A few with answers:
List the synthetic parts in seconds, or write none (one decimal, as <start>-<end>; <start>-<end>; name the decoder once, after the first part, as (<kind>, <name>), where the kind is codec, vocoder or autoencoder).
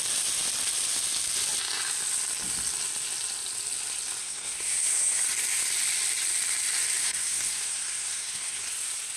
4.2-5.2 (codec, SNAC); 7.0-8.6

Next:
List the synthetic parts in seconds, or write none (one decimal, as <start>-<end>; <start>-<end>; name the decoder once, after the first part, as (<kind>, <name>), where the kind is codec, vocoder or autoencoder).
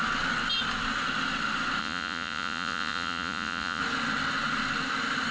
1.8-3.8 (vocoder, Vocos)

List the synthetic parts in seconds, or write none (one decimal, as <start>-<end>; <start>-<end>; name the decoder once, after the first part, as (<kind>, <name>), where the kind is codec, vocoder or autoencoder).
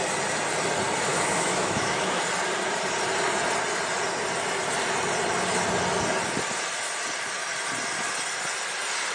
1.1-2.2 (autoencoder, DAC-VAE)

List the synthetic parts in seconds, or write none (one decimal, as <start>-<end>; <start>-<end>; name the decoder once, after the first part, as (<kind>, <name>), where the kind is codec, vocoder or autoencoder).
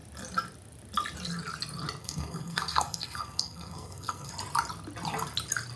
2.0-4.3 (codec, SNAC)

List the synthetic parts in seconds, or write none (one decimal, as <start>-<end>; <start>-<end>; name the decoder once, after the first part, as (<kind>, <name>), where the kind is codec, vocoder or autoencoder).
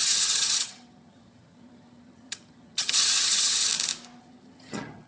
0.0-3.7 (vocoder, HiFi-GAN); 4.2-5.1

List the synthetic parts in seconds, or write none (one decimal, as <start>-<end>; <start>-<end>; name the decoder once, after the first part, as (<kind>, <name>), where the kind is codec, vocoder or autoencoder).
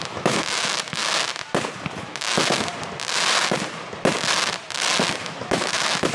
0.0-1.0 (autoencoder, DAC-VAE); 2.0-2.7; 5.2-6.1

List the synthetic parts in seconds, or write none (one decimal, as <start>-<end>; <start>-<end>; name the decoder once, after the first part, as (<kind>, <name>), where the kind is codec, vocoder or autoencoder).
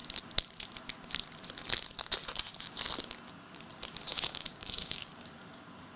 4.1-5.1 (codec, DAC)